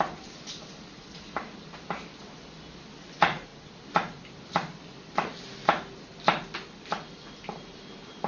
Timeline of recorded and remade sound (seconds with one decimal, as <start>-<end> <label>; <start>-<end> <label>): 0.0-8.3 recorded